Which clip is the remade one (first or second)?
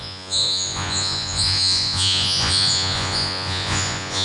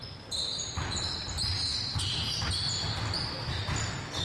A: first